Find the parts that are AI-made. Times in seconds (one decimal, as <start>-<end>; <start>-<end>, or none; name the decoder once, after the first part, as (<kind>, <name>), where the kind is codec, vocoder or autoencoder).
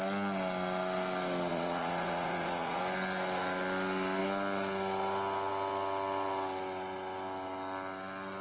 1.5-2.8 (vocoder, Vocos)